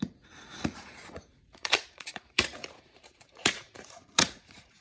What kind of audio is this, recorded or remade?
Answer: remade